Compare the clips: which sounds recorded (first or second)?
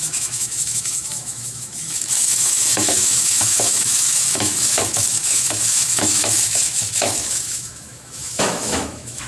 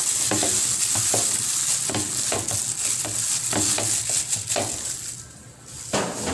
second